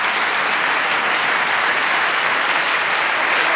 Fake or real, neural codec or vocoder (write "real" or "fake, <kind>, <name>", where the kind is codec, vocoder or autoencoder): real